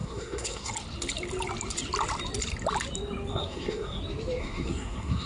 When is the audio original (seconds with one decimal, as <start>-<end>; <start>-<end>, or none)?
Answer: 0.7-3.3; 4.0-4.4